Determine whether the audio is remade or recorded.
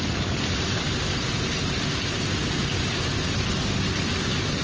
recorded